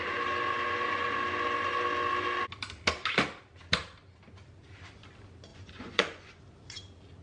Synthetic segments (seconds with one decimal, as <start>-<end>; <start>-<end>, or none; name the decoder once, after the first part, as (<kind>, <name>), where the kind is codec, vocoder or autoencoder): 5.5-6.4 (vocoder, Vocos)